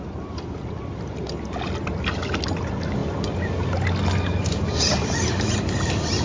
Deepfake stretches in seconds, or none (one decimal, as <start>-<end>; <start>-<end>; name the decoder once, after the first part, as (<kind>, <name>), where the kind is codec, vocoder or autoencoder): none